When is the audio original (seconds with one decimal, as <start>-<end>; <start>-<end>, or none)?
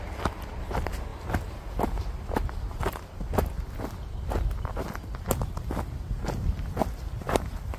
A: 0.0-7.2